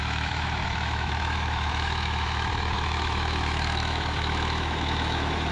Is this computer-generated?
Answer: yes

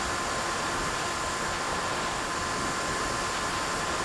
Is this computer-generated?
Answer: no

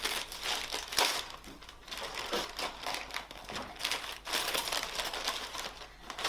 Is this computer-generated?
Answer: no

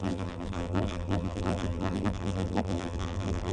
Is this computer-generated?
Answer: yes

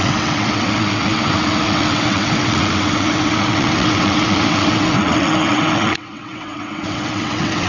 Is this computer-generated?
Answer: yes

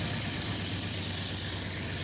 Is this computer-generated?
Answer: no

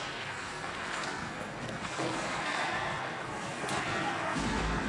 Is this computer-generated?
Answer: yes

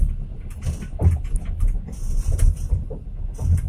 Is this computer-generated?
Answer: no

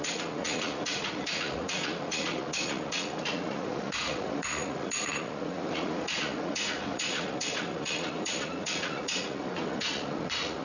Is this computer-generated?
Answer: yes